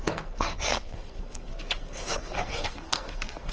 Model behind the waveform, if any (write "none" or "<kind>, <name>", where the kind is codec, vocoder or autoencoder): codec, SNAC